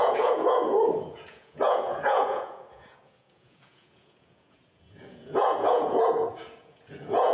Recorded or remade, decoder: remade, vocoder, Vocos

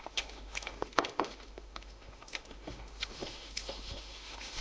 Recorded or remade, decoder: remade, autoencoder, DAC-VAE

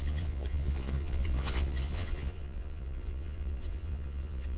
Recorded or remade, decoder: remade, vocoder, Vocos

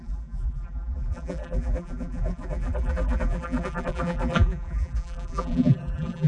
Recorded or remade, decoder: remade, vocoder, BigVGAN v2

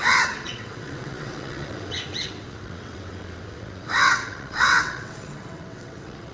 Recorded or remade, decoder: remade, vocoder, WaveNeXt